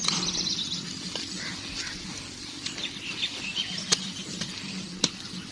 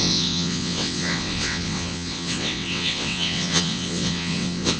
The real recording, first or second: first